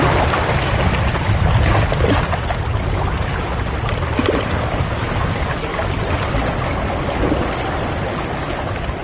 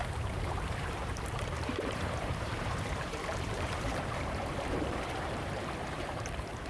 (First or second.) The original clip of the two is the first